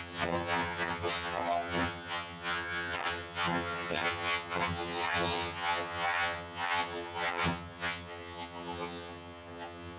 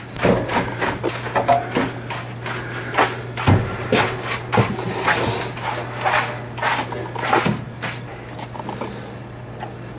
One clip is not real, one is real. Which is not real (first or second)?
first